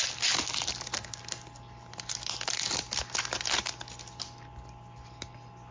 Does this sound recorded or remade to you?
recorded